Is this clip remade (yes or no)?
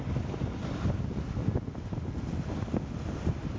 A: no